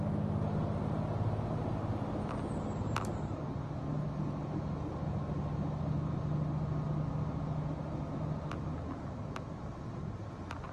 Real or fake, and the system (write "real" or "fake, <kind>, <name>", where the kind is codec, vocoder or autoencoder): real